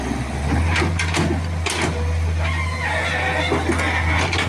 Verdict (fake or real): real